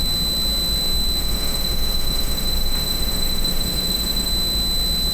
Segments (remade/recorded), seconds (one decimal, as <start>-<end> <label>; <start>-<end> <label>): 0.0-1.2 recorded; 1.2-4.3 remade; 4.3-5.1 recorded